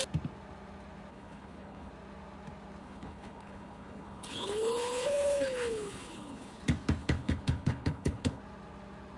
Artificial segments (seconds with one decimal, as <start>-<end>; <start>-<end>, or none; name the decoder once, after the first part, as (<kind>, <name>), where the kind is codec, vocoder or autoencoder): 1.1-1.9 (codec, HILCodec); 2.8-6.6; 7.0-8.4